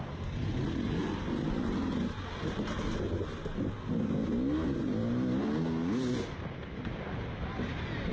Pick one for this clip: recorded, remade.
recorded